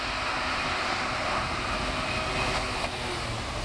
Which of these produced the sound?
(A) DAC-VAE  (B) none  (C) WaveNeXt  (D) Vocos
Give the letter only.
B